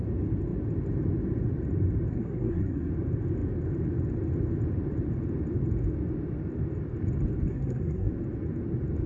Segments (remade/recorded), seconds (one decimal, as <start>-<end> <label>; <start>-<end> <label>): 0.0-2.1 recorded; 2.1-2.9 remade; 2.9-7.5 recorded; 7.5-8.1 remade; 8.1-9.1 recorded